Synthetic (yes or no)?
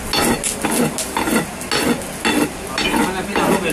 no